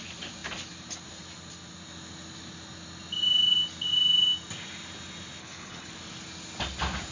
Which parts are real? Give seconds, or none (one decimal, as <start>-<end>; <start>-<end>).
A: 0.0-5.4; 5.9-7.1